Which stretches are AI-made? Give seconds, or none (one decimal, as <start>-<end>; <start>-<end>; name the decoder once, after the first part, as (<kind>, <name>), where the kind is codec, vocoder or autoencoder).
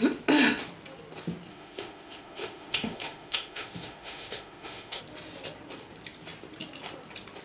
1.5-5.0 (autoencoder, DAC-VAE)